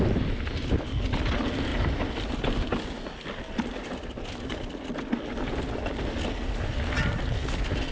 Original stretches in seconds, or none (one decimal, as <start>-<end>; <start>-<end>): 0.0-7.9